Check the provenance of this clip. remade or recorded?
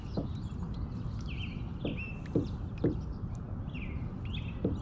recorded